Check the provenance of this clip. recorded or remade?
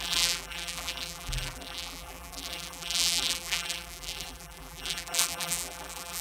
remade